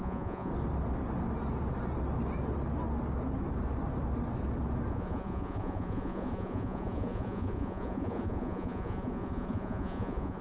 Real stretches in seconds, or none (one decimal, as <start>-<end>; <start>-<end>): 0.5-4.9